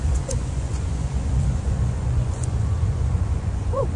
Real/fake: fake